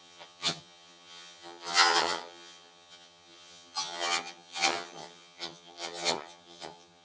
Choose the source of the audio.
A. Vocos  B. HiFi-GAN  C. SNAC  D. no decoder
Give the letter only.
B